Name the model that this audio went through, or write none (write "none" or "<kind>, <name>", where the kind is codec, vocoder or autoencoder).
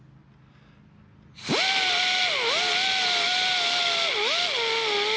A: none